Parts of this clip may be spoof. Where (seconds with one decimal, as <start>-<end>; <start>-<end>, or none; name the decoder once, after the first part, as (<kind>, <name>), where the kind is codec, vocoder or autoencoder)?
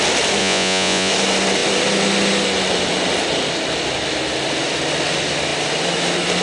0.4-1.1 (vocoder, Vocos)